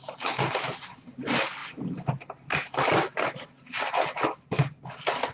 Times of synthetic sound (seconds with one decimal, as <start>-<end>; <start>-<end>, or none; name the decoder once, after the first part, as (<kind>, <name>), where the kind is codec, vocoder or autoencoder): none